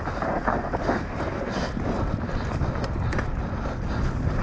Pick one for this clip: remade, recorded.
recorded